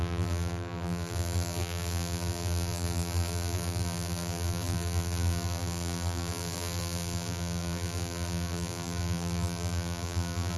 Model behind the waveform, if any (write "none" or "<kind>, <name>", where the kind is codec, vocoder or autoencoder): vocoder, BigVGAN v2